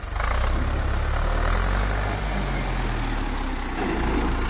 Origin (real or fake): real